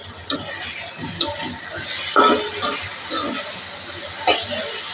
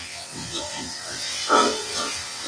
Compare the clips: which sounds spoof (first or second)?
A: second